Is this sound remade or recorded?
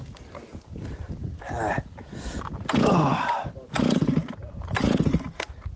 recorded